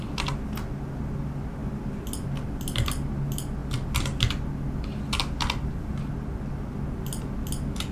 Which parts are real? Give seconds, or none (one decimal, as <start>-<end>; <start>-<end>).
0.0-7.9